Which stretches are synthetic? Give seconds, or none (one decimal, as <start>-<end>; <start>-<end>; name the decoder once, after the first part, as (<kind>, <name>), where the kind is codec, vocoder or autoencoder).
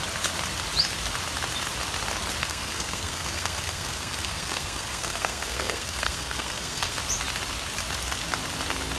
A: 2.4-7.0 (codec, SNAC)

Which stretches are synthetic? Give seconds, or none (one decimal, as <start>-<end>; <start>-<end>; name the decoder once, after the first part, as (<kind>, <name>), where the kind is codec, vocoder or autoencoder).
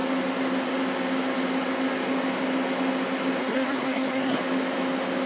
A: 3.4-4.4 (codec, SNAC)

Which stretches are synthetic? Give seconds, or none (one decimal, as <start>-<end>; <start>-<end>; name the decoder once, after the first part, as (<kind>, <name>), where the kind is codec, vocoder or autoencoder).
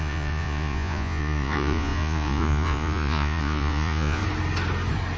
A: 0.0-4.2 (vocoder, Vocos)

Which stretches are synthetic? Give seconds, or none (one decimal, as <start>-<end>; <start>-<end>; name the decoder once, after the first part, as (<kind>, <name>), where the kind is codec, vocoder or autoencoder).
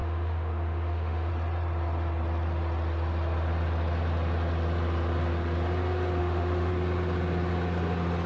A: 0.0-1.3 (autoencoder, DAC-VAE); 6.2-6.7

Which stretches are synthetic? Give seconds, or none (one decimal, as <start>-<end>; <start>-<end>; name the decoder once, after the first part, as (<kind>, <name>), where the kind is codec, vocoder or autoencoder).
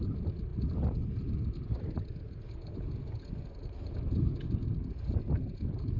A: none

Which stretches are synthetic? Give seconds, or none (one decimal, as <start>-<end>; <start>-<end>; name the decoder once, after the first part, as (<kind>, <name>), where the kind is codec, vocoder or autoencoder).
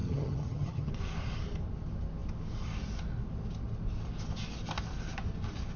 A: 0.0-0.9 (vocoder, HiFi-GAN)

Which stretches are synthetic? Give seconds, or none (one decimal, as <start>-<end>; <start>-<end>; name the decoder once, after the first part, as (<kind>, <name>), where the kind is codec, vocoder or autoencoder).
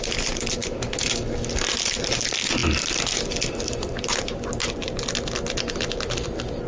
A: none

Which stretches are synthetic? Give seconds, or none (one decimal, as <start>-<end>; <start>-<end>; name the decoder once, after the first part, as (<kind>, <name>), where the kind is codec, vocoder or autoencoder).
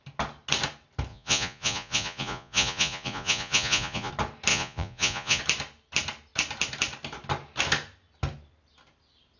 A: 1.1-4.1 (vocoder, Vocos); 4.5-5.4